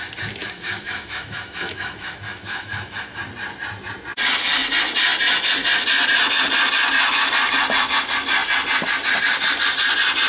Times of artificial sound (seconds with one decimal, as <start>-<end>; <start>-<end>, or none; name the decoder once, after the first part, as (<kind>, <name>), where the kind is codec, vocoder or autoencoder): 0.4-3.2 (autoencoder, DAC-VAE)